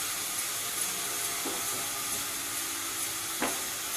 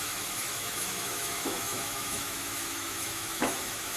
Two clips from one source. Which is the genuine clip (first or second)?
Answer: first